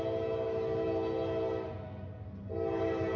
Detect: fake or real real